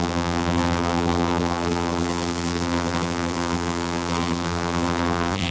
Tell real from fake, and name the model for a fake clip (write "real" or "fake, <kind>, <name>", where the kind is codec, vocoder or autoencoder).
fake, vocoder, BigVGAN v2